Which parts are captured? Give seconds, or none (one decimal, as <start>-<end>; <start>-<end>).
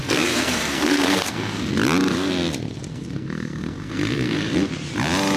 1.7-2.9; 4.7-5.4